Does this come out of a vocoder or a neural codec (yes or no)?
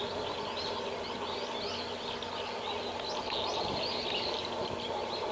no